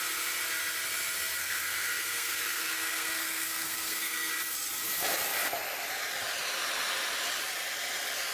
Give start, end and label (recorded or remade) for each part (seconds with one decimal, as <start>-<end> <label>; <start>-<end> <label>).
0.0-1.4 recorded; 1.4-4.3 remade; 4.3-8.3 recorded